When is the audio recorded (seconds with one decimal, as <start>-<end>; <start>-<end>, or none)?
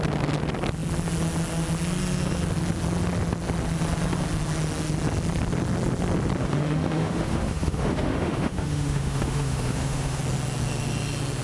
0.0-6.4; 10.2-11.4